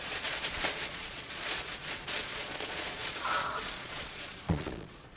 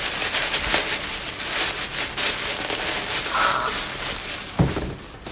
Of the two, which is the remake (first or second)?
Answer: first